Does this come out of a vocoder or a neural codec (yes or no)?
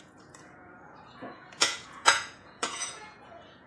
yes